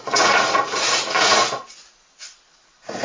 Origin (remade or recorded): remade